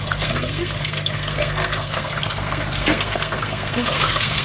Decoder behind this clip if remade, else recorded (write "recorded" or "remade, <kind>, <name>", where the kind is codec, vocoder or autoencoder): remade, codec, SNAC